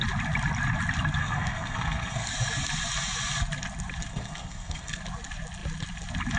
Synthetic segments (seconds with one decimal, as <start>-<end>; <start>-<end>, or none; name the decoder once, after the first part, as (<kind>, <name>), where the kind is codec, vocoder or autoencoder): 1.2-2.3 (codec, SNAC); 4.1-5.0